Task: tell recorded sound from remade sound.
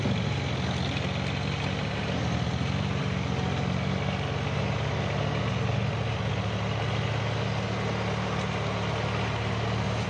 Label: recorded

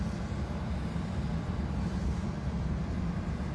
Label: recorded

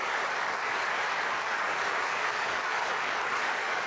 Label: remade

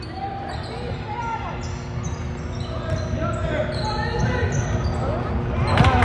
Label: recorded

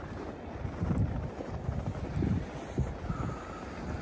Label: recorded